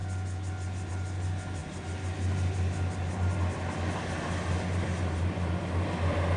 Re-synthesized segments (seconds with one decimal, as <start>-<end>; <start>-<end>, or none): none